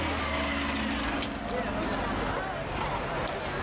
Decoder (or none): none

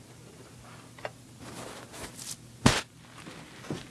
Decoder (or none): none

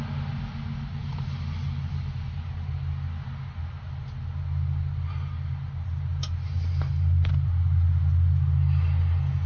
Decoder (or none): none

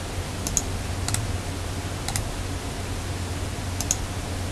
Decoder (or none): none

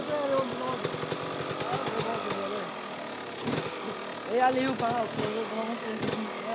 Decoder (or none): none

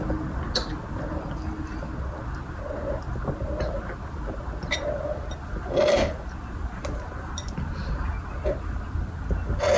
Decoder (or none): none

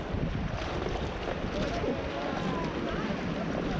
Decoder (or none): none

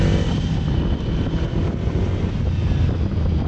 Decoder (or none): none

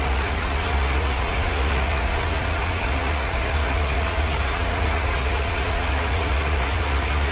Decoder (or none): vocoder, Vocos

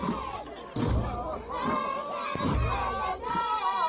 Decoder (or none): none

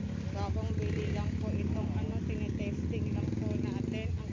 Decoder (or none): none